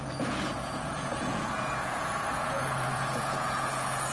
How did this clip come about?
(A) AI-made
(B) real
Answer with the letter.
A